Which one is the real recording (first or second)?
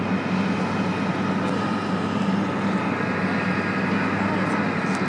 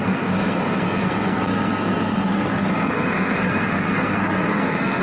first